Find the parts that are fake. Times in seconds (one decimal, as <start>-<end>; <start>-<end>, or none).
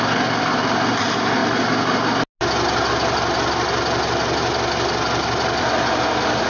none